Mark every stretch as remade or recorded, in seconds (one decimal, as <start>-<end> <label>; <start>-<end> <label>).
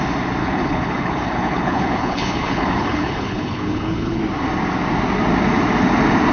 0.0-0.4 recorded; 0.4-4.2 remade; 4.2-6.3 recorded